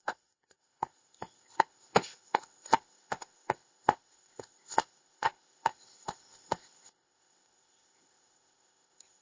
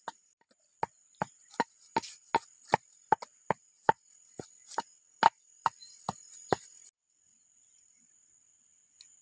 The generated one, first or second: first